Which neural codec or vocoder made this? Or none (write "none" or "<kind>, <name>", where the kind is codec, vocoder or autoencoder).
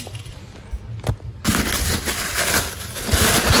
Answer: none